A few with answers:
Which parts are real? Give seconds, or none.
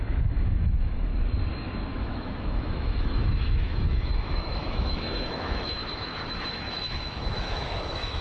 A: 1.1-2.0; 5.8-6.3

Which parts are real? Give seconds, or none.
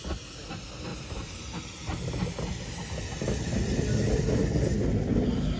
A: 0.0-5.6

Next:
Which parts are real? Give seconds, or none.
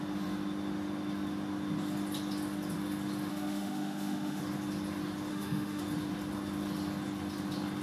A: 0.0-3.3; 4.4-5.3; 5.8-7.8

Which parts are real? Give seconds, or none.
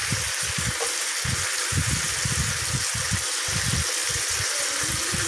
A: 0.0-5.3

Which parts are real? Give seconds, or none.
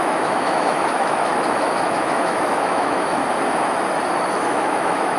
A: 3.2-4.3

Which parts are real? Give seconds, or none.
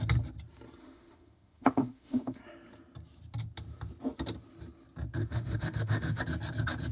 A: 0.0-0.8; 2.4-5.2; 6.2-6.9